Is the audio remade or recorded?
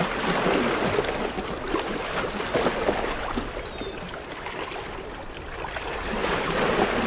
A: recorded